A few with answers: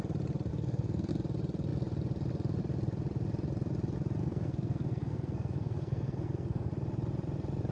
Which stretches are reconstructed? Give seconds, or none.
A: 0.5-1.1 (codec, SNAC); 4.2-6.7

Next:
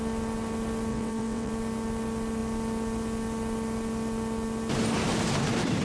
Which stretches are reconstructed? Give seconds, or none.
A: 0.9-1.5 (vocoder, WaveNeXt)

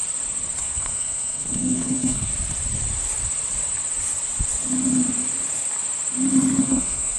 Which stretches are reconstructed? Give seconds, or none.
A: 0.6-2.3 (codec, SNAC); 6.6-7.2

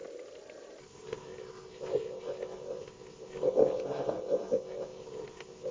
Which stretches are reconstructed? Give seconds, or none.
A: 0.8-5.7 (codec, SNAC)

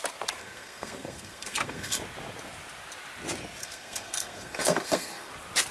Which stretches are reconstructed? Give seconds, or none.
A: 0.4-2.0 (codec, SNAC); 3.6-5.3

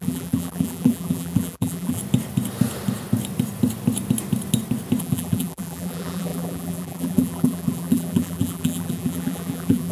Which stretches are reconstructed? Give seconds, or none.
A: 0.0-2.0 (vocoder, BigVGAN v2); 5.0-9.9

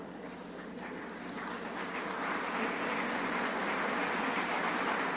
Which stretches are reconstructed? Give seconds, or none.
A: 3.0-3.6 (vocoder, Vocos)